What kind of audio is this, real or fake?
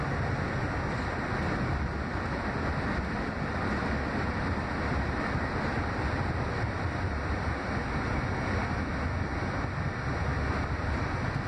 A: real